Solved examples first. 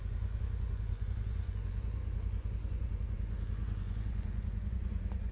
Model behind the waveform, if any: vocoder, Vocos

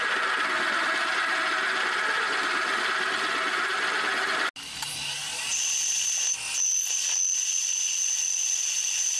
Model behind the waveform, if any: none